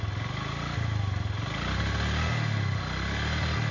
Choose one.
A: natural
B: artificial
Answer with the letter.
A